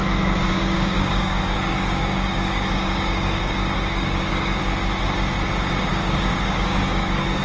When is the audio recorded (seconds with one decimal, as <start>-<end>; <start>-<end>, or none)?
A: 0.0-0.5; 4.6-5.9